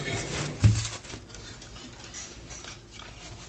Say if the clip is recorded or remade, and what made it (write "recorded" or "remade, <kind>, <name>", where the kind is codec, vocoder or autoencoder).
recorded